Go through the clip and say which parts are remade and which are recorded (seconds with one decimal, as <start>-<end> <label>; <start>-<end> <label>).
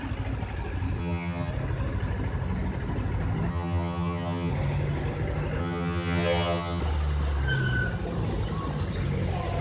0.0-1.0 recorded; 1.0-1.5 remade; 1.5-3.5 recorded; 3.5-4.5 remade; 4.5-5.6 recorded; 5.6-6.8 remade; 6.8-9.6 recorded